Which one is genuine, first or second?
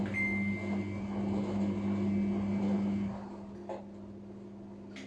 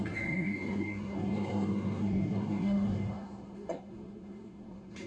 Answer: first